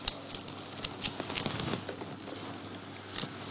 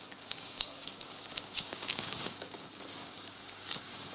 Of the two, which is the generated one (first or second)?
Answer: second